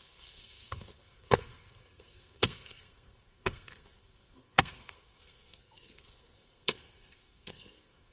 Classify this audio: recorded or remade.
remade